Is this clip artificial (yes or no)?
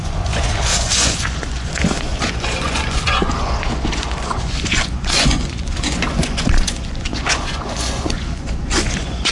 yes